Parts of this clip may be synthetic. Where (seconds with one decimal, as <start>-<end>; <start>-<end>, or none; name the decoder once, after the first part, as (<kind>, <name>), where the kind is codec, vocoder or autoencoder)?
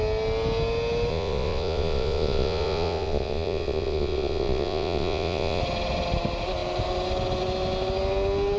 1.1-5.6 (vocoder, Vocos)